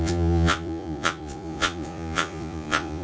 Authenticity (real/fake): fake